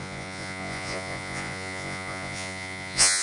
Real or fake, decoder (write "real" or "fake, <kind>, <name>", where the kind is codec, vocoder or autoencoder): fake, vocoder, Vocos